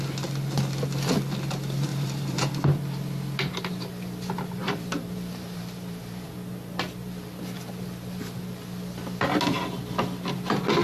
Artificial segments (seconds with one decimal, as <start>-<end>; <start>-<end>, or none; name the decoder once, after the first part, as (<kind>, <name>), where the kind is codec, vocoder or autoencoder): 1.9-2.5 (vocoder, BigVGAN v2); 4.6-6.3